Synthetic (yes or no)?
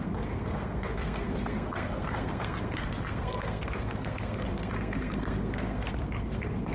yes